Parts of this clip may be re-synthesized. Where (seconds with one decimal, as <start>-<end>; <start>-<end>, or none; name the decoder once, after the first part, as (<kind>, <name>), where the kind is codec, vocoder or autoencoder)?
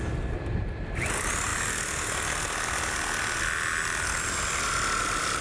none